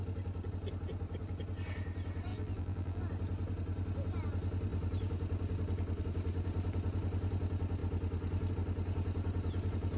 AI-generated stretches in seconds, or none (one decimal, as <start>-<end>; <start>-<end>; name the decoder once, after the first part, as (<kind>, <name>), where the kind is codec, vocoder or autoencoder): 2.3-3.0 (vocoder, BigVGAN v2)